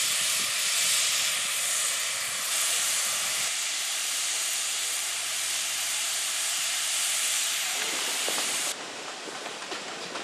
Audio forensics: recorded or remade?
remade